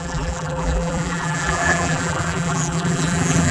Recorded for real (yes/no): no